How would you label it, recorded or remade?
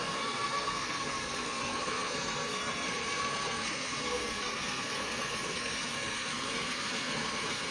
remade